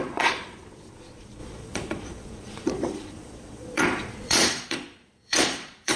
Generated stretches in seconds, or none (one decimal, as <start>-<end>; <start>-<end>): 0.0-6.0